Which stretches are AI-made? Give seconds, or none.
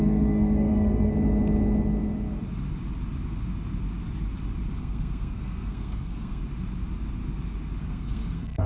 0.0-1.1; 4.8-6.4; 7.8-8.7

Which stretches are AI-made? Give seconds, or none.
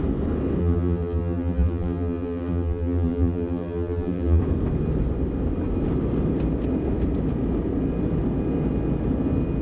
0.6-4.4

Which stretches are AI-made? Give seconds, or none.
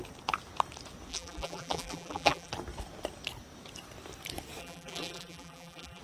1.1-2.5; 4.6-6.0